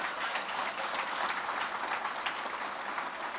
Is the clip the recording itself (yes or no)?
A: no